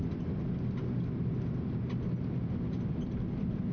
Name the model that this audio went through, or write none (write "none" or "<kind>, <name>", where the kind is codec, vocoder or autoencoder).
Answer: none